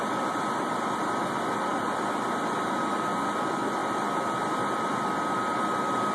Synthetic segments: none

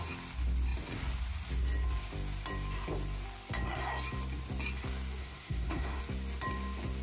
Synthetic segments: 5.2-6.0 (codec, SNAC)

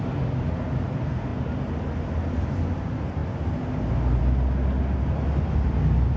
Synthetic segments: none

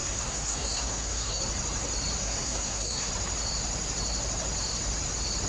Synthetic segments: 0.0-1.4 (codec, SNAC); 2.2-3.1

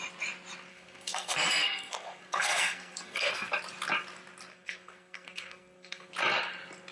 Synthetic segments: 0.7-3.5 (codec, SNAC); 4.5-6.1

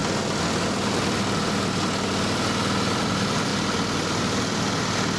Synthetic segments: none

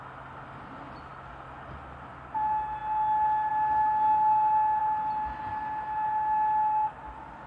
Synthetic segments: none

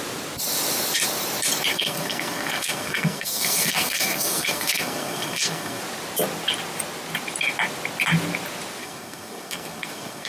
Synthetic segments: 1.7-5.8 (codec, SNAC); 8.8-10.3